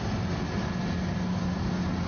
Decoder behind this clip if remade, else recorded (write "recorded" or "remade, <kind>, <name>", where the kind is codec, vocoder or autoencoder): recorded